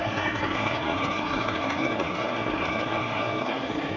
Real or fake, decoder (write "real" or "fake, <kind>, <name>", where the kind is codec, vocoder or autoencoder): fake, codec, SNAC